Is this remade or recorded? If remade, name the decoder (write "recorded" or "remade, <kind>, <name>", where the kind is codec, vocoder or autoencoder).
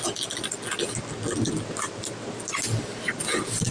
recorded